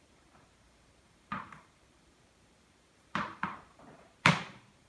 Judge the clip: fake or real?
fake